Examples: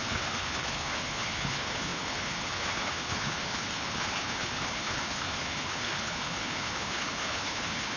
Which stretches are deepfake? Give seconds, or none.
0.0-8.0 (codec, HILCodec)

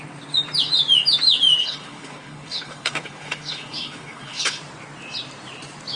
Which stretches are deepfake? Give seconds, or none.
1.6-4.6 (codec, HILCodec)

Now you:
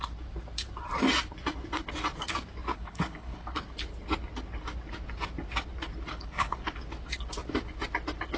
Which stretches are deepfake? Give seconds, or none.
2.7-3.6 (codec, HILCodec); 6.1-6.7

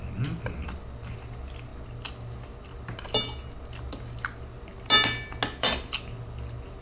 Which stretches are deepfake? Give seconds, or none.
none

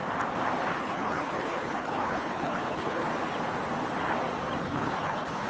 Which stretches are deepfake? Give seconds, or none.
0.8-3.1 (codec, HILCodec); 4.6-5.5

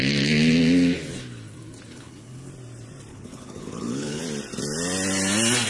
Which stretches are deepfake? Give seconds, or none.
1.9-2.5 (codec, HILCodec); 3.1-4.2

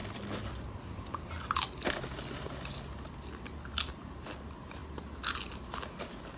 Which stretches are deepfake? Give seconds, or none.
none